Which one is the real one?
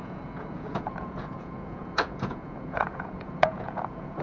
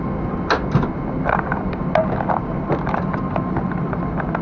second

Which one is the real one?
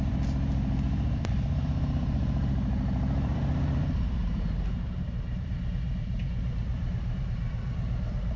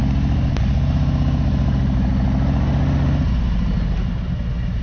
second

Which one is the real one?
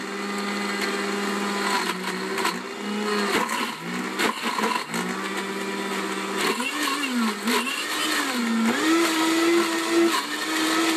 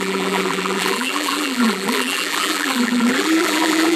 first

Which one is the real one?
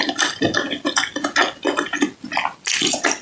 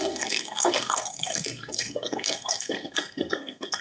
first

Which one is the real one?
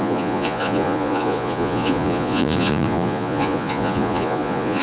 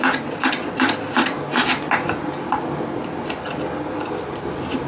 second